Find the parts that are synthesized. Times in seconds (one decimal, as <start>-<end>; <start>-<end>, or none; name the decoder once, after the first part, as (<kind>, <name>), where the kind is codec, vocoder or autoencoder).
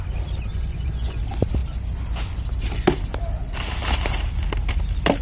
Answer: 0.5-1.2 (vocoder, Vocos)